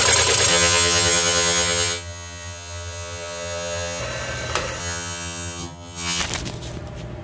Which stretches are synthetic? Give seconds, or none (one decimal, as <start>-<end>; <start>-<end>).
0.5-4.0; 4.8-6.2